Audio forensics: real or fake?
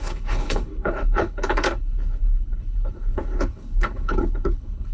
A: fake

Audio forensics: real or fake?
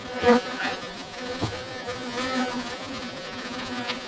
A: fake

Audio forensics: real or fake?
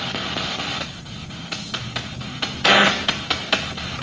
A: real